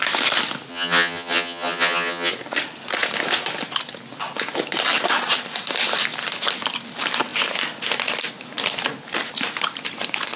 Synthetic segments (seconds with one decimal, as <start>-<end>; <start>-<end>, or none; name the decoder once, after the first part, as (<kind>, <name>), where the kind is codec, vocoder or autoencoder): 0.7-2.3 (vocoder, HiFi-GAN)